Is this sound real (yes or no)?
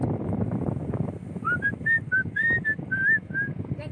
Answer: yes